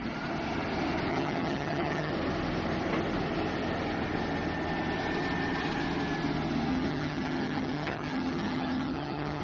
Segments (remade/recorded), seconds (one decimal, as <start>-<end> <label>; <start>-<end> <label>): 0.0-1.1 recorded; 1.1-2.1 remade; 2.1-6.7 recorded; 6.7-9.4 remade